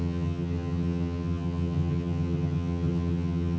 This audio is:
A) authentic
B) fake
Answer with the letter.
B